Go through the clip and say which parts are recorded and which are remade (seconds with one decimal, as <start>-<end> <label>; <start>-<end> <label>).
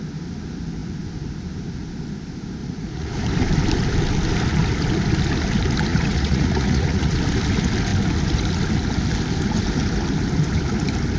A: 0.0-2.6 recorded; 2.6-3.2 remade; 3.2-5.9 recorded; 5.9-7.2 remade; 7.2-11.2 recorded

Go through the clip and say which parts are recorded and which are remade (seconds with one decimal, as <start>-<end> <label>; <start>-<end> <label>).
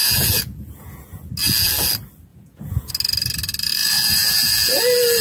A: 0.0-1.3 remade; 1.3-2.3 recorded; 2.3-2.9 remade; 2.9-3.8 recorded; 3.8-4.8 remade; 4.8-5.2 recorded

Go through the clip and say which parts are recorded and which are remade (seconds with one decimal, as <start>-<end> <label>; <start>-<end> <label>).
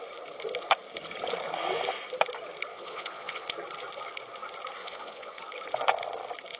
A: 0.0-2.7 recorded; 2.7-3.5 remade; 3.5-4.8 recorded; 4.8-5.4 remade; 5.4-6.6 recorded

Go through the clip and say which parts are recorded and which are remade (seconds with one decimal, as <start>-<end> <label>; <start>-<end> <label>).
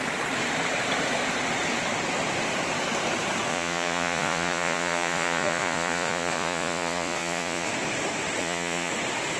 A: 0.0-3.5 recorded; 3.5-7.7 remade; 7.7-8.4 recorded; 8.4-8.9 remade; 8.9-9.4 recorded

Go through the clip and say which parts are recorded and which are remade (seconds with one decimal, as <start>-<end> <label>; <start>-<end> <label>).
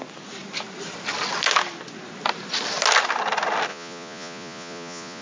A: 0.0-3.7 recorded; 3.7-5.2 remade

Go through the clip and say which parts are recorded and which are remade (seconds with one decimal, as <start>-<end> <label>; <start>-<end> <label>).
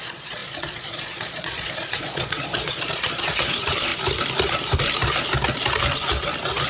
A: 0.0-3.9 remade; 3.9-6.7 recorded